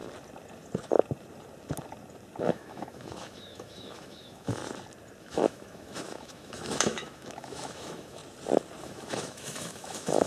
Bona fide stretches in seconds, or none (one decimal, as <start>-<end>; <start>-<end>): 0.0-2.4; 4.6-5.2; 8.2-8.8